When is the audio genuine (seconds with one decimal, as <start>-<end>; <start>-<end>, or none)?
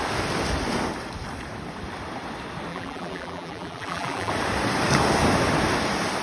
0.0-2.7; 4.3-6.2